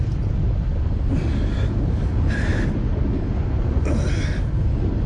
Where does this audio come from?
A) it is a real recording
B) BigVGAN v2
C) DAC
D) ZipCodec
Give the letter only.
A